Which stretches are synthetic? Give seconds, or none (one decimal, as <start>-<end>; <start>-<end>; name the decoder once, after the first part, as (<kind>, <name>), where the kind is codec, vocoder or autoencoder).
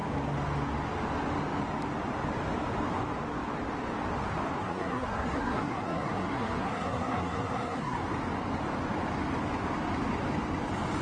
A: 4.6-8.0 (codec, SNAC)